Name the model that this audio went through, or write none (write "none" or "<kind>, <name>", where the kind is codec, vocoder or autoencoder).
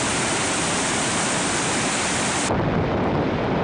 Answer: none